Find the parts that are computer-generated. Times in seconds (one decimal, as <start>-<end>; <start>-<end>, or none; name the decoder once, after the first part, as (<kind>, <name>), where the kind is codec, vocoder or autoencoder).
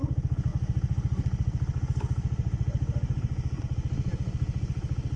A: 0.5-3.6 (vocoder, BigVGAN v2)